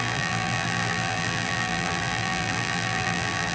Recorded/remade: remade